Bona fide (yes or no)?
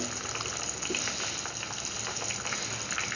yes